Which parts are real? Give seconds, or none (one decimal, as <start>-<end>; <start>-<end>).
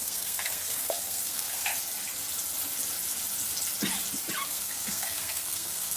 1.7-4.5